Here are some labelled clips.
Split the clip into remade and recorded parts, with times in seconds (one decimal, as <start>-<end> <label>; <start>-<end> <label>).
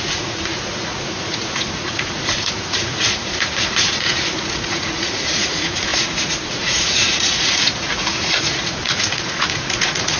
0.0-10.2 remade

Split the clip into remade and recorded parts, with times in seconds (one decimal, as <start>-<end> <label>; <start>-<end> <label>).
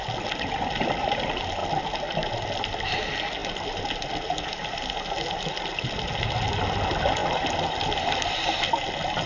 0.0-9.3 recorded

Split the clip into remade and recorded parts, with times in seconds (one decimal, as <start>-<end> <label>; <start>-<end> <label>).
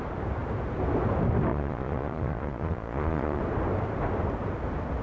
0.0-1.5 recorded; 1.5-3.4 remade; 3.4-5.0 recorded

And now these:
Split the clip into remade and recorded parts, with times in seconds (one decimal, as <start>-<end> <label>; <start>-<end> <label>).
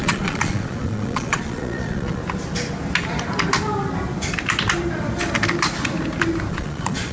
0.0-2.2 remade; 2.2-6.5 recorded; 6.5-7.1 remade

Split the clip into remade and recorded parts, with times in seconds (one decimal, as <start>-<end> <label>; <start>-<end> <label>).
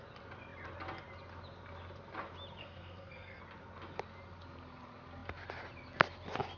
0.0-2.6 recorded; 2.6-3.4 remade; 3.4-6.6 recorded